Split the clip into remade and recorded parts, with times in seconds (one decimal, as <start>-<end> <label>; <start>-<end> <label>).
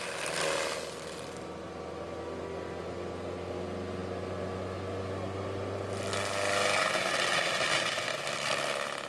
0.0-9.1 recorded